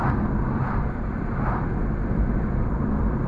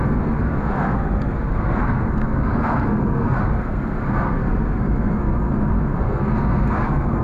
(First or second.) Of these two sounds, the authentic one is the first